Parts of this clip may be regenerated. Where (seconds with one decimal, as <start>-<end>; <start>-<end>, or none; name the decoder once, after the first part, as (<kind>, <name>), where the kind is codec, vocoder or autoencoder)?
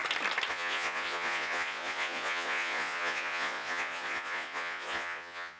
0.5-5.6 (vocoder, Vocos)